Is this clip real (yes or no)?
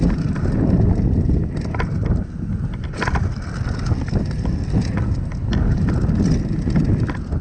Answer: yes